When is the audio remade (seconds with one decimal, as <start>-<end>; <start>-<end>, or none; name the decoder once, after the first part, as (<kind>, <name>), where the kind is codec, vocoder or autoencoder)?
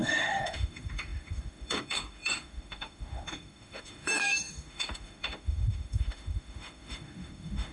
0.0-7.7 (autoencoder, DAC-VAE)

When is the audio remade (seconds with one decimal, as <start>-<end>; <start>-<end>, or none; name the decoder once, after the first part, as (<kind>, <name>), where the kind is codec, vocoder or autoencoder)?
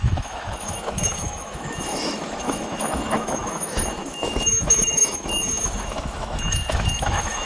0.0-7.5 (autoencoder, DAC-VAE)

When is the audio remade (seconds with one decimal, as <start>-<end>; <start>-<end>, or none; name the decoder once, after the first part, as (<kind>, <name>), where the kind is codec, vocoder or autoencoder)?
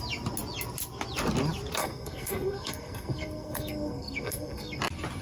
1.8-4.8 (codec, SNAC)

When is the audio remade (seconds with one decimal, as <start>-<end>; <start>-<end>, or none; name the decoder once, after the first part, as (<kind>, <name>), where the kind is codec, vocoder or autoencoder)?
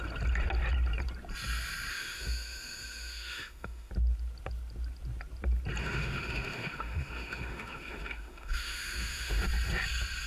1.9-3.9 (autoencoder, DAC-VAE); 5.8-9.4